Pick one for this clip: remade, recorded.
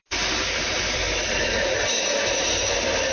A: remade